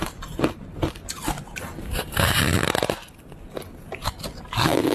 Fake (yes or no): no